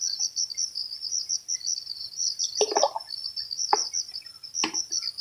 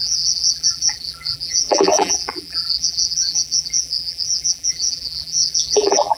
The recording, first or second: first